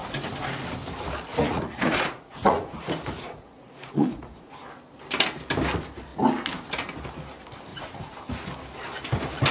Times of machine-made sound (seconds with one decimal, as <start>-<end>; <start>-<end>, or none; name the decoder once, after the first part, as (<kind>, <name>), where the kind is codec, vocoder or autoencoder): 1.3-4.5 (vocoder, Vocos); 7.7-8.2